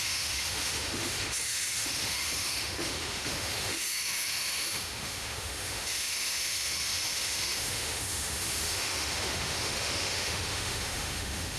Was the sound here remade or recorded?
remade